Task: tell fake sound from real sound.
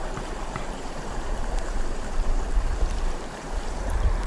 fake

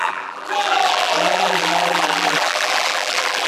fake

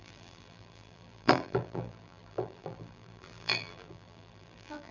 fake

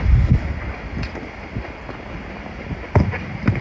real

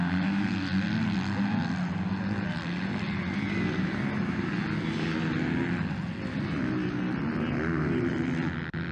real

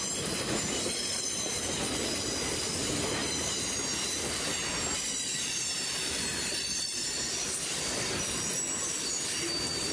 real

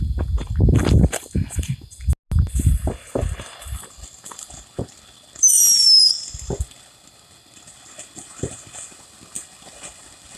real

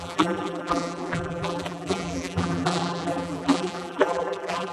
fake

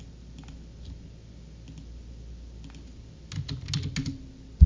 real